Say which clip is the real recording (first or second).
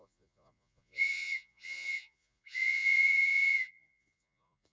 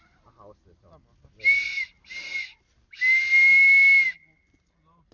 second